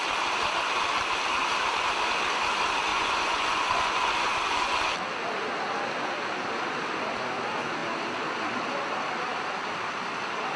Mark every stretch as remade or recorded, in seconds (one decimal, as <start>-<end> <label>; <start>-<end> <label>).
0.0-2.9 recorded; 2.9-4.8 remade; 4.8-10.6 recorded